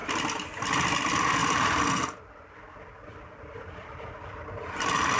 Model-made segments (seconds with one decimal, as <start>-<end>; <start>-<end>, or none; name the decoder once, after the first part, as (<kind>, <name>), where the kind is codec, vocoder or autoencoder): none